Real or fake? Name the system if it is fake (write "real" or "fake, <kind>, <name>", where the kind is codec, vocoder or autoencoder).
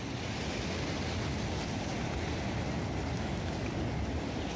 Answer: real